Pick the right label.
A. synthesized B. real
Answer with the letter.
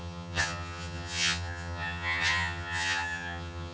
A